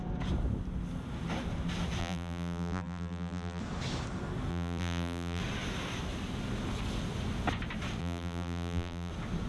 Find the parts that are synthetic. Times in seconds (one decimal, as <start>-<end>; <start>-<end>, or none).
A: 2.0-3.6; 4.5-5.4; 8.0-9.1